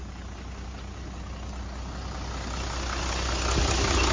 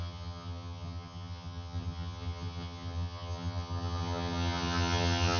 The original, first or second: first